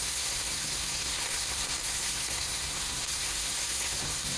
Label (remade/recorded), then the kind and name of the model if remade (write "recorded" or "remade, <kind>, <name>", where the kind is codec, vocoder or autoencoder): remade, codec, SNAC